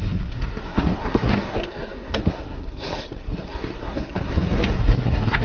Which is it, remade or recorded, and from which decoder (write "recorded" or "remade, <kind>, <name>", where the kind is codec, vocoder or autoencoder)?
remade, codec, SNAC